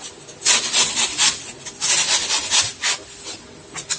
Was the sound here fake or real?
real